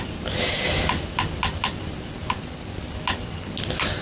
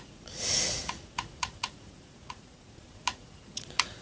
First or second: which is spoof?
second